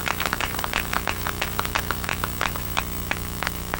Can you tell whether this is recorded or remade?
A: remade